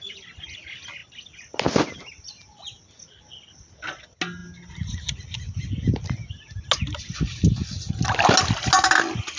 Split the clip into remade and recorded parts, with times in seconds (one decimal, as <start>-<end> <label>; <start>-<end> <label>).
0.0-9.4 recorded